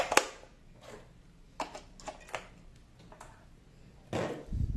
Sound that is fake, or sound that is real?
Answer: real